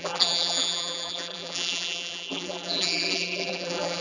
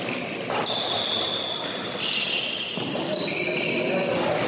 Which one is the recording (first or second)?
second